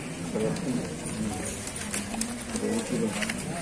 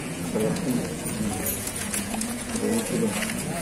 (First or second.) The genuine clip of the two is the first